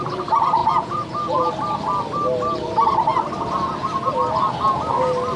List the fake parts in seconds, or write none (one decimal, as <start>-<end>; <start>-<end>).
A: 0.6-1.5